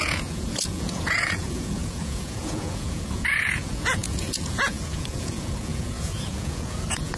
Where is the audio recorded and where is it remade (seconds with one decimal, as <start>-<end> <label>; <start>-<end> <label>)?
0.0-7.2 remade